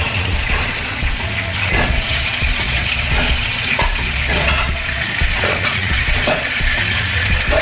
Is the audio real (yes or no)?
no